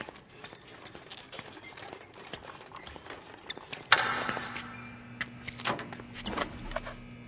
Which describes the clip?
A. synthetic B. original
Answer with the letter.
B